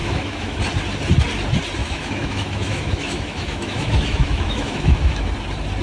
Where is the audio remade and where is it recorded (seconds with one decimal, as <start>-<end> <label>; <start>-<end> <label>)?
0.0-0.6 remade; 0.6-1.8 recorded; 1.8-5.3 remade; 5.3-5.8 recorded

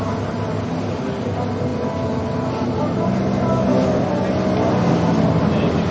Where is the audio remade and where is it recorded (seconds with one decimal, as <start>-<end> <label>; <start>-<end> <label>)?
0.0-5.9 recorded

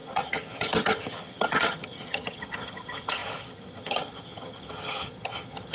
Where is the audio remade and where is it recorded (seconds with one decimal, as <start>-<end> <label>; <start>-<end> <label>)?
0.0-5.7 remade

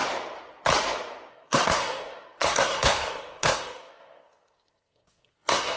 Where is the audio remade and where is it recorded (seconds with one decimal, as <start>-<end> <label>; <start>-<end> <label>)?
0.0-1.3 recorded; 1.3-5.8 remade

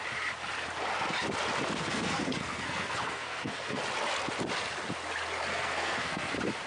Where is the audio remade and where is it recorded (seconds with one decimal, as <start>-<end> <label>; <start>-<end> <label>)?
0.0-1.8 recorded; 1.8-3.8 remade; 3.8-5.5 recorded; 5.5-6.3 remade; 6.3-6.7 recorded

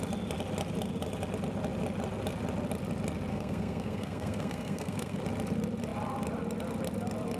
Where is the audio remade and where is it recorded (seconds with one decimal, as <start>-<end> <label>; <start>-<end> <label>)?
0.0-3.3 recorded; 3.3-5.2 remade; 5.2-7.4 recorded

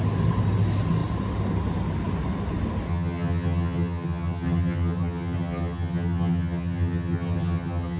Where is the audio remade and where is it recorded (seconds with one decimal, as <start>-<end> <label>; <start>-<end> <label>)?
0.0-2.9 recorded; 2.9-8.0 remade

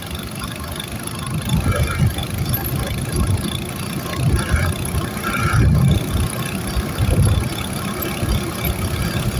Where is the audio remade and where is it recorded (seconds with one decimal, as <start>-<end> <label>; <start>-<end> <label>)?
0.0-9.4 recorded